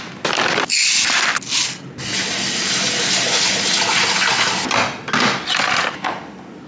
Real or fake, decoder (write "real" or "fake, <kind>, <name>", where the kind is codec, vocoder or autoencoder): real